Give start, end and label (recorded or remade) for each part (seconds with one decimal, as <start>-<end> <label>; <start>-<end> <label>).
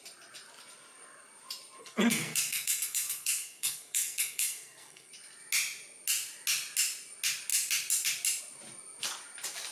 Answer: 0.0-1.8 recorded; 1.8-5.1 remade; 5.1-9.7 recorded